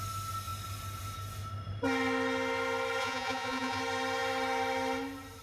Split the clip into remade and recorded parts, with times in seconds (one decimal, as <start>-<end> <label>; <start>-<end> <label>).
0.0-3.0 recorded; 3.0-3.8 remade; 3.8-5.4 recorded